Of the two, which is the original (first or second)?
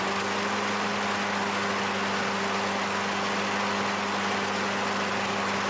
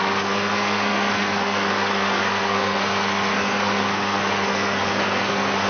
first